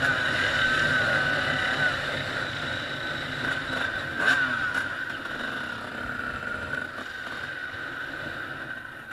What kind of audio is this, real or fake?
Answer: real